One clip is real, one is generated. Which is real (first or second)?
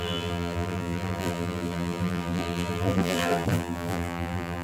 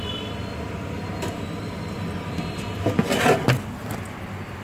second